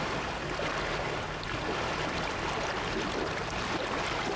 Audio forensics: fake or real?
real